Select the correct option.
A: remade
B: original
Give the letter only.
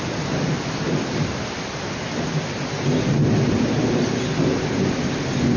B